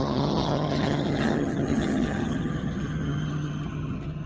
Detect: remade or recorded remade